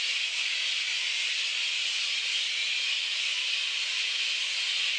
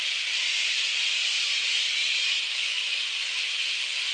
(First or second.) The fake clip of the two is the second